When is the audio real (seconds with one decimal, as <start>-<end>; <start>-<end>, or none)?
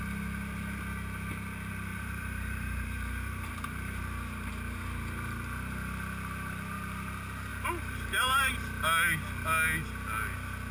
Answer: 0.0-1.9; 4.0-7.5; 8.5-10.7